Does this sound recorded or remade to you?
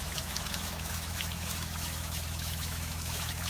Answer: remade